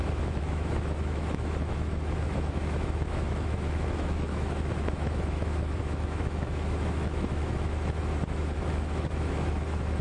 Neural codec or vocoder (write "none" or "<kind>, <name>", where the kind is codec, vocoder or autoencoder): autoencoder, DAC-VAE